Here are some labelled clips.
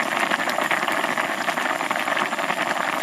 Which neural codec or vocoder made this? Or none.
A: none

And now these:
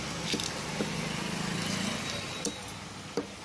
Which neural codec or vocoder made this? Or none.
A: none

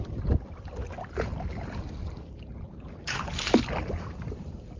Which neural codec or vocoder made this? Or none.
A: none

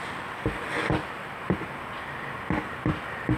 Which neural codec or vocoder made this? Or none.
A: none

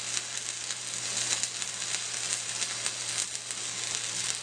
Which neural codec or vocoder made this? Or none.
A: none